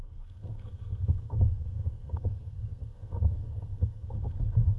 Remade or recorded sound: remade